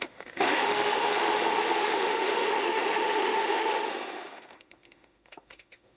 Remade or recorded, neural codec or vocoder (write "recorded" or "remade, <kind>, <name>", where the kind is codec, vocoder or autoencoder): remade, autoencoder, DAC-VAE